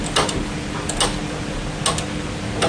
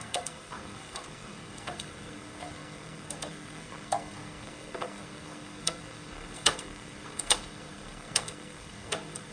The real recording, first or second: first